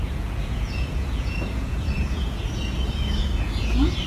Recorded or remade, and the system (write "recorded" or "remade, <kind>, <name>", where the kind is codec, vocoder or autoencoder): remade, vocoder, Vocos